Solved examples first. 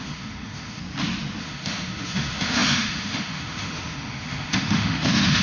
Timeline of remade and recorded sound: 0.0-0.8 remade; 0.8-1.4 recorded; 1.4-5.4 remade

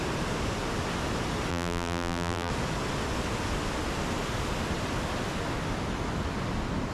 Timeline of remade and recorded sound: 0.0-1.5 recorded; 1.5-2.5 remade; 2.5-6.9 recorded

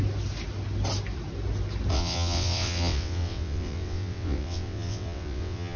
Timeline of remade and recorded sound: 0.0-1.9 recorded; 1.9-5.8 remade

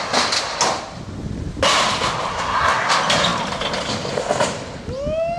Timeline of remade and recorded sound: 0.0-2.3 recorded; 2.3-2.9 remade; 2.9-5.4 recorded

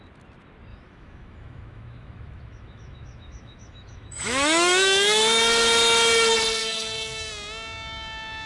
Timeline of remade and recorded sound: 0.0-0.7 recorded; 0.7-5.2 remade; 5.2-6.6 recorded; 6.6-7.3 remade; 7.3-8.5 recorded

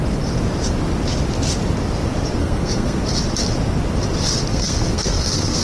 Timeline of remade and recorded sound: 0.0-2.4 recorded; 2.4-3.0 remade; 3.0-4.5 recorded; 4.5-5.6 remade

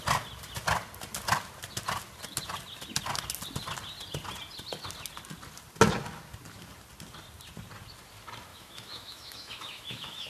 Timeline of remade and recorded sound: 0.0-8.5 recorded; 8.5-10.3 remade

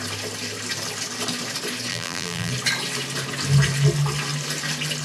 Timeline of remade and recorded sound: 0.0-1.9 recorded; 1.9-2.5 remade; 2.5-5.0 recorded